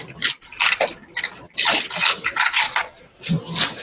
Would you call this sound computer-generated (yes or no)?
no